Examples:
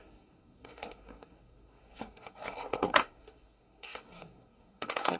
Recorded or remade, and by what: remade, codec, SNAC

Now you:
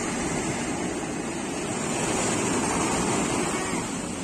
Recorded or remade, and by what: recorded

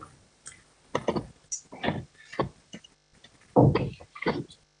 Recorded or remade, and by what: recorded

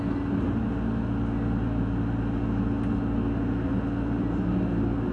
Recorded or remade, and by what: recorded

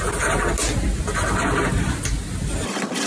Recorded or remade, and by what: recorded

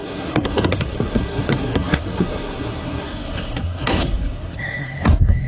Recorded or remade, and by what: remade, codec, SNAC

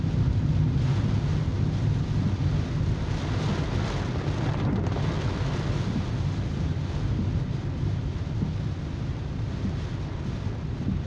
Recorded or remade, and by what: recorded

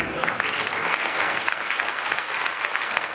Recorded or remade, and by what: remade, codec, SNAC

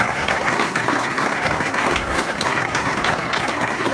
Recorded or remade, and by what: remade, codec, SNAC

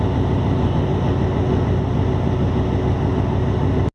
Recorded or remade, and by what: recorded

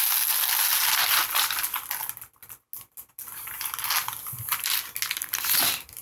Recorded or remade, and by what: recorded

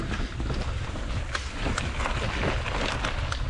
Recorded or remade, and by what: recorded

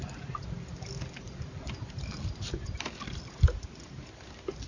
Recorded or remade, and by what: recorded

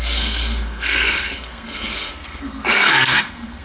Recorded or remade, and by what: remade, codec, SNAC